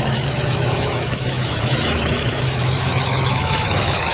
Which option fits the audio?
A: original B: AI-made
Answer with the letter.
B